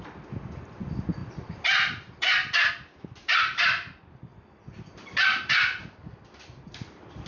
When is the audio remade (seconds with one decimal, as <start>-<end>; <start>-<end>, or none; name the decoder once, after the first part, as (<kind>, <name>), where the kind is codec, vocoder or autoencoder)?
0.0-7.3 (vocoder, BigVGAN v2)